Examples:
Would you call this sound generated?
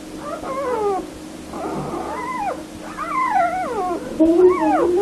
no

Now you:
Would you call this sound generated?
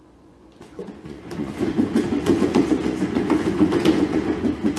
yes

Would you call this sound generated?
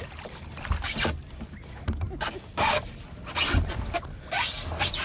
no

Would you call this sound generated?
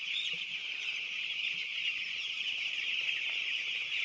yes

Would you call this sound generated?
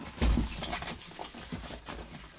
no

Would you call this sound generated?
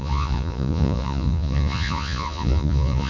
yes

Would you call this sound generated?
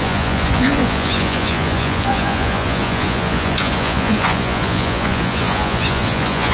yes